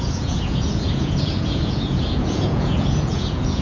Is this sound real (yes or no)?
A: no